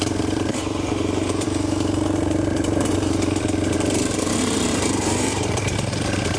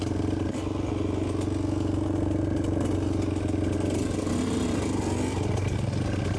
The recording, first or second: second